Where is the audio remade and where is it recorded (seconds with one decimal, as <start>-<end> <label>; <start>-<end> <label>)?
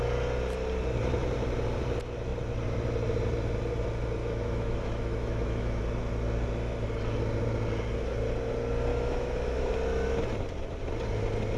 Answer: 0.0-4.2 recorded; 4.2-5.8 remade; 5.8-8.9 recorded; 8.9-9.7 remade; 9.7-11.6 recorded